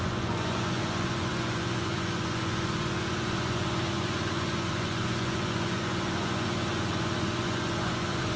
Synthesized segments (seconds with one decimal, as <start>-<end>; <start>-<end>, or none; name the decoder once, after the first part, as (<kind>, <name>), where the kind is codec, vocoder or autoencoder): 0.0-8.4 (vocoder, Vocos)